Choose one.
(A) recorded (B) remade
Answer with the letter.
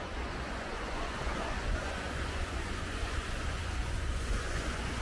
B